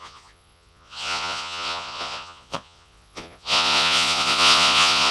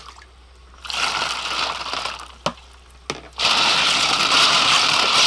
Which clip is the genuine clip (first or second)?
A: second